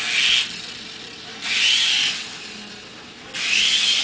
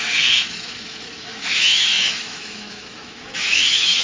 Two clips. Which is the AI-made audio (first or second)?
second